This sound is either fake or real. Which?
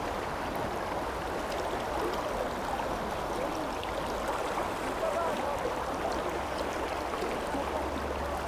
real